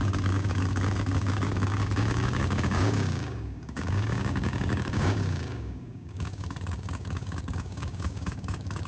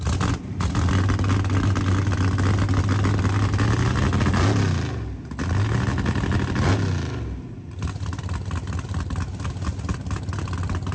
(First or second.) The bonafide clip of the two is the second